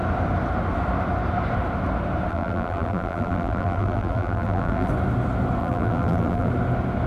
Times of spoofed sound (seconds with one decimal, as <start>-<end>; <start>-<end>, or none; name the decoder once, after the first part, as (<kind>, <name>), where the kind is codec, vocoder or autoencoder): 2.3-4.9 (vocoder, BigVGAN v2); 5.6-6.5